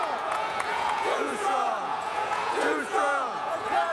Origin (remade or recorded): remade